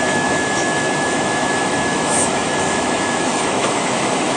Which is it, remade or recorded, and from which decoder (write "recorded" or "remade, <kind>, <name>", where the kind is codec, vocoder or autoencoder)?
remade, autoencoder, DAC-VAE